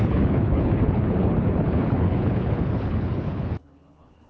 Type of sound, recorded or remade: remade